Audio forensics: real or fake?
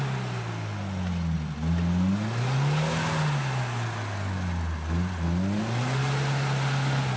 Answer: real